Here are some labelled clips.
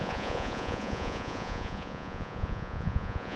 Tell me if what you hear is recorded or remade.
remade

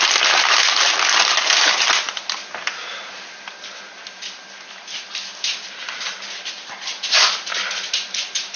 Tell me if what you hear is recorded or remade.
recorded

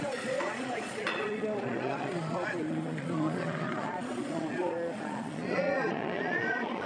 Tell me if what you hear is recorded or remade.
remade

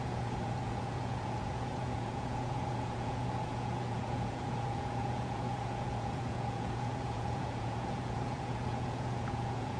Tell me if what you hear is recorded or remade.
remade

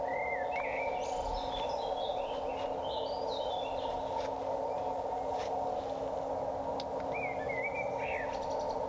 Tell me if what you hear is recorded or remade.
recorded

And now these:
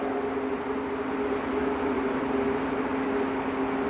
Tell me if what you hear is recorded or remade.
recorded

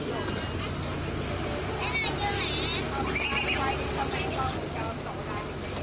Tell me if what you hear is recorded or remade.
recorded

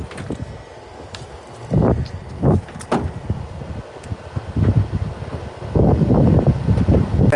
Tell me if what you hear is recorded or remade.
recorded